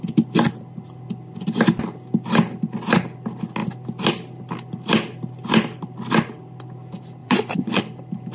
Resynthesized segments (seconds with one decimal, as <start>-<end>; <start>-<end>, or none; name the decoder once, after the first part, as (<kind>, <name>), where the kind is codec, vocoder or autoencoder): 7.2-7.8 (vocoder, Vocos)